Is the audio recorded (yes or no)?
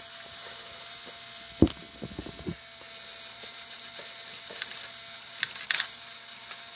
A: yes